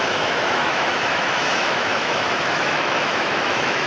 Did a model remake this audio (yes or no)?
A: yes